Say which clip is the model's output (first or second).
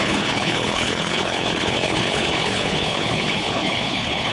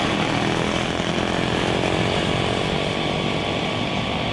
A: first